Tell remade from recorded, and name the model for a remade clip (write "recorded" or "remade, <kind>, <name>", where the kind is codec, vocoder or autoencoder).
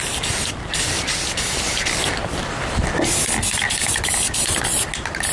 recorded